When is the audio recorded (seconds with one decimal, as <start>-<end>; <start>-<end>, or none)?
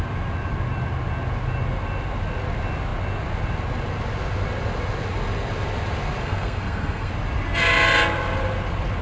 0.0-6.2; 7.1-9.0